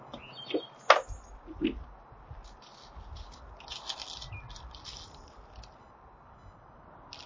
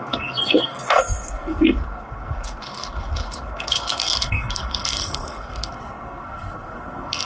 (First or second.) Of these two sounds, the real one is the first